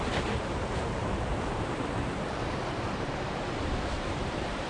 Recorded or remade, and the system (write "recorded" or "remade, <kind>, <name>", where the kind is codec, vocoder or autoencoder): remade, vocoder, BigVGAN v2